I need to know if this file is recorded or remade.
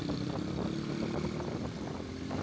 recorded